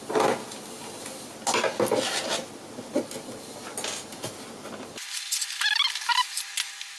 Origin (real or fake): real